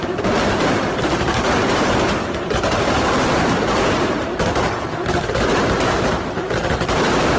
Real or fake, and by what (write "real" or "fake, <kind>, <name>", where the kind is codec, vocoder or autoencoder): fake, vocoder, BigVGAN v2